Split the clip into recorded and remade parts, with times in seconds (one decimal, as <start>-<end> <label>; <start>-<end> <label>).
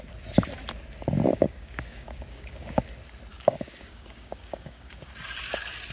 0.0-1.3 recorded; 1.3-2.8 remade; 2.8-3.3 recorded; 3.3-5.1 remade; 5.1-5.9 recorded